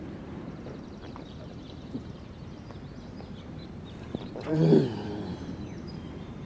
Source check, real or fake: fake